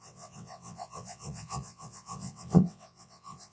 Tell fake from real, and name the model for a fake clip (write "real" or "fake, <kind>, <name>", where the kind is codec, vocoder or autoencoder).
fake, vocoder, WaveNeXt